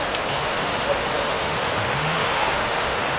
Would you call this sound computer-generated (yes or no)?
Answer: yes